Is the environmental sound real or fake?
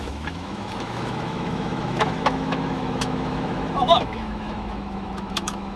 fake